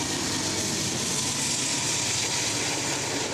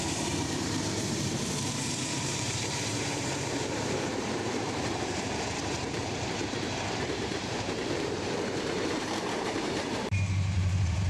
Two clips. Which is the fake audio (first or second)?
second